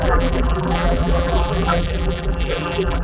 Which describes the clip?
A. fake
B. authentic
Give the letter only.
A